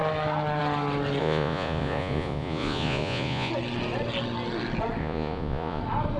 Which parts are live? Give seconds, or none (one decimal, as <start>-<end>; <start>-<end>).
0.0-1.2; 3.5-5.0; 5.8-6.2

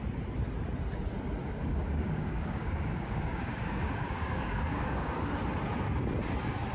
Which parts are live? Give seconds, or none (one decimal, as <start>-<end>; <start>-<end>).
0.0-1.4; 5.3-6.7

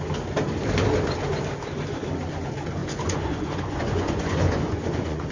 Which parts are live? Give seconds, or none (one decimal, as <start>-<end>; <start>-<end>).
0.0-2.8

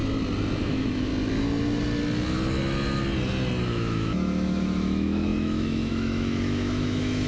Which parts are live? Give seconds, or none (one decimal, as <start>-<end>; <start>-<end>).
0.0-0.6; 1.1-3.7

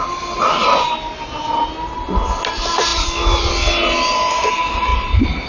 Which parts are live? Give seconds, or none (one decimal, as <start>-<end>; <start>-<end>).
0.0-5.5

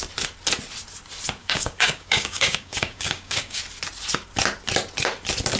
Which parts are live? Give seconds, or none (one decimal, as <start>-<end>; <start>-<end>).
0.0-1.4; 3.6-5.6

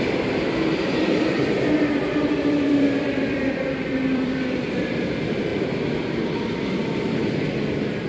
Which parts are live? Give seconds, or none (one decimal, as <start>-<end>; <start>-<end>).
0.0-0.8; 4.8-8.1